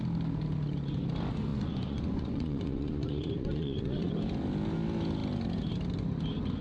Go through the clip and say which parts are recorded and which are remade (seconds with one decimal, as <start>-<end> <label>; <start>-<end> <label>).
0.0-1.5 recorded; 1.5-4.1 remade; 4.1-6.6 recorded